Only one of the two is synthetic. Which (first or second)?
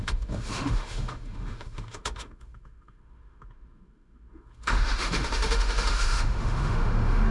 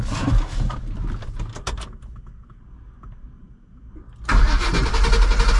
first